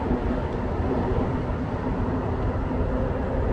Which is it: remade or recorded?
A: remade